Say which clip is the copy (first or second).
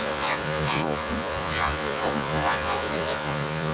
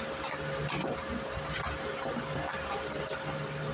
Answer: first